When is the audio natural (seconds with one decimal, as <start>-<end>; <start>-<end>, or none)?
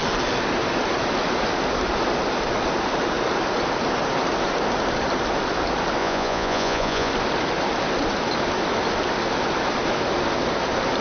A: 0.0-6.0; 7.1-11.0